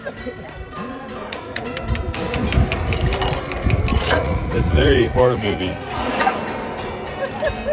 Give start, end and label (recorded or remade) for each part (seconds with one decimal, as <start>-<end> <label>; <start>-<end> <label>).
0.0-1.2 recorded; 1.2-1.7 remade; 1.7-3.9 recorded; 3.9-6.2 remade; 6.2-7.7 recorded